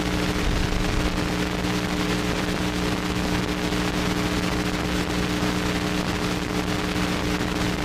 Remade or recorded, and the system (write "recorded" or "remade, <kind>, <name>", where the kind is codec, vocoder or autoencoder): recorded